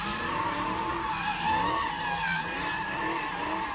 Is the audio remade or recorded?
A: recorded